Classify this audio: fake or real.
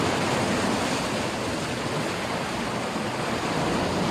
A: real